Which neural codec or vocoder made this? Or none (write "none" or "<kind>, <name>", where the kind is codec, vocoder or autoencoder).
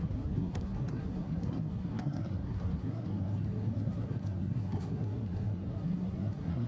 codec, SNAC